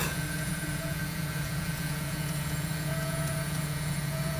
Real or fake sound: fake